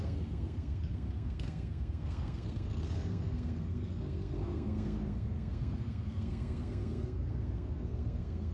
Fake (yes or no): yes